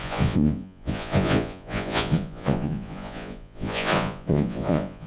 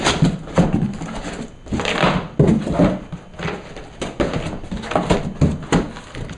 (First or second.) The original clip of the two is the second